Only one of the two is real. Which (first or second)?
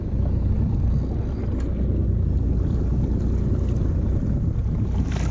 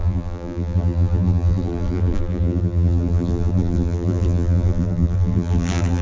first